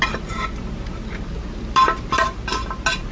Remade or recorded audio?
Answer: recorded